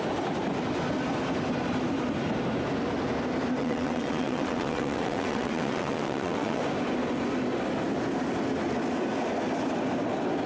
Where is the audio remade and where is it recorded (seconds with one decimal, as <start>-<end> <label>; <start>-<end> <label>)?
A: 0.0-3.6 recorded; 3.6-6.6 remade; 6.6-10.5 recorded